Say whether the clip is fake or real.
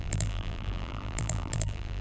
fake